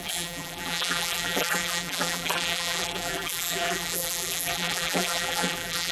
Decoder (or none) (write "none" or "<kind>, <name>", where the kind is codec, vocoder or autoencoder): vocoder, BigVGAN v2